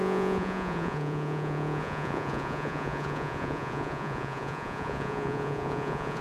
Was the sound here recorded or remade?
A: remade